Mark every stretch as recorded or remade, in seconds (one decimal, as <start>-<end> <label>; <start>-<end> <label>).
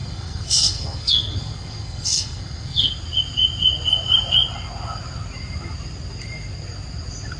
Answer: 0.0-2.9 remade; 2.9-7.4 recorded